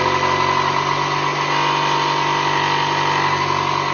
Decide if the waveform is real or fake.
real